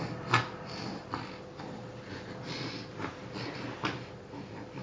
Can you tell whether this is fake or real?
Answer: real